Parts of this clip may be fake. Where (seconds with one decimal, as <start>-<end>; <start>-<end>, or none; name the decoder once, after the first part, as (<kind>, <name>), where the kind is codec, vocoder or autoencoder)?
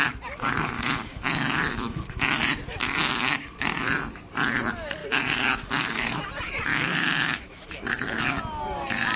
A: 1.1-2.2 (autoencoder, DAC-VAE); 6.7-8.4